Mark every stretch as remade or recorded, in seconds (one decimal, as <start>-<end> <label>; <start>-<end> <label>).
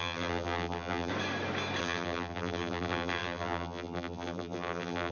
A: 0.0-1.1 remade; 1.1-1.8 recorded; 1.8-5.1 remade